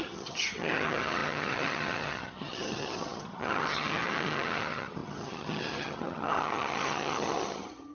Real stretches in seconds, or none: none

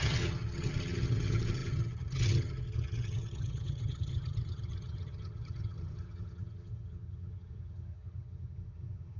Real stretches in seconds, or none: none

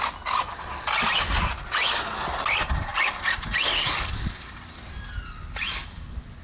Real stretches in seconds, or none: 0.0-6.4

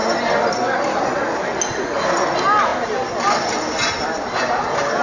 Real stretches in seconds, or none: 0.0-5.0

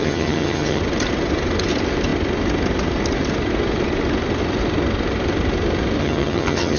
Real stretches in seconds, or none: 0.8-6.0

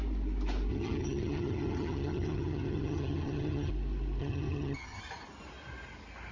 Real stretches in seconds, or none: 0.0-0.7; 3.7-4.2; 5.0-6.3

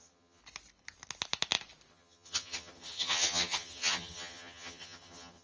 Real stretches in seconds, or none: 0.4-1.9